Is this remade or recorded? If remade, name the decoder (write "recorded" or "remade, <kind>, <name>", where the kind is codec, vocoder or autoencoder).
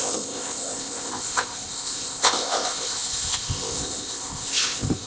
remade, codec, ZipCodec